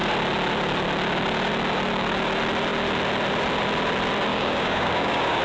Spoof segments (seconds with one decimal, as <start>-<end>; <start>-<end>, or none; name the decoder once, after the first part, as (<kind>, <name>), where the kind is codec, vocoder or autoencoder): 4.3-5.4 (codec, DAC)